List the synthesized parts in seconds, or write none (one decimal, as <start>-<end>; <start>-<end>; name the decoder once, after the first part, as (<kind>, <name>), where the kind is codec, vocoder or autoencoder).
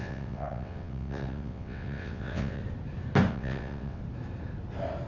0.0-2.6 (vocoder, WaveNeXt); 3.3-4.0